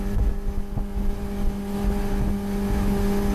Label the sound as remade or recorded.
recorded